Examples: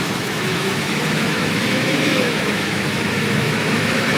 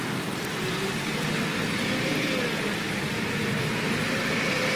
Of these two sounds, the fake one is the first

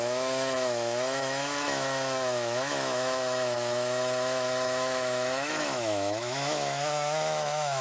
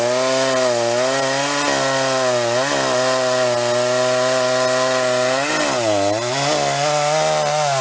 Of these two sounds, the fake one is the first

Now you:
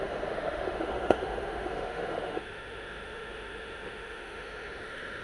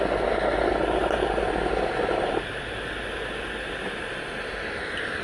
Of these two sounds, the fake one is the first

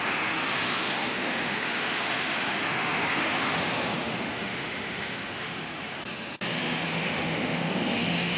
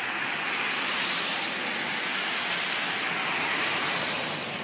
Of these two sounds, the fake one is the first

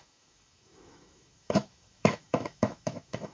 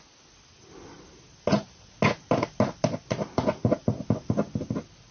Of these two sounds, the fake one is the first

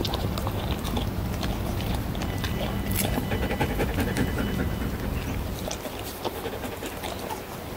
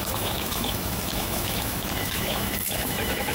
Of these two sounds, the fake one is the second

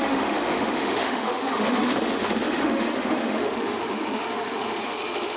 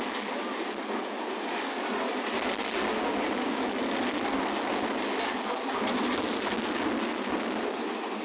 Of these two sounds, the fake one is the first